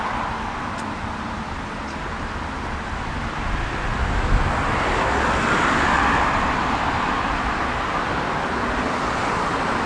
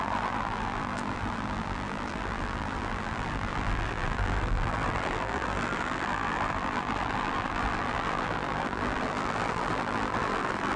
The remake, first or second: second